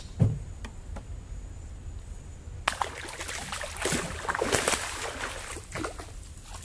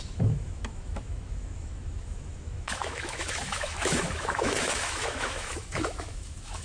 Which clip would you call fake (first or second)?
second